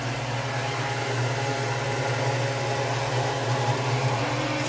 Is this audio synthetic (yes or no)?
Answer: no